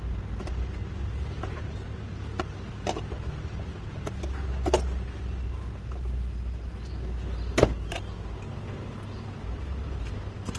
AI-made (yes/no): no